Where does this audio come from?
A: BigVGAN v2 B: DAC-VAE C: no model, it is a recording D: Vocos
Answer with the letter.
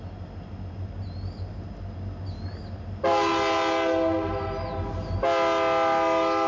C